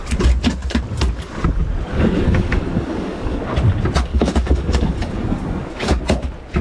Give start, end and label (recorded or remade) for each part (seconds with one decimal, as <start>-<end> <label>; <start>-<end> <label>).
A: 0.0-1.9 recorded; 1.9-3.4 remade; 3.4-4.1 recorded; 4.1-6.0 remade; 6.0-6.6 recorded